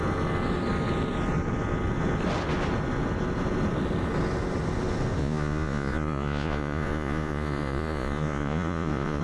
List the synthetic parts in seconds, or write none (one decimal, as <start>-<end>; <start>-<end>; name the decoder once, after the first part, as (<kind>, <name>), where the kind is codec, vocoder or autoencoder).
5.2-9.2 (vocoder, Vocos)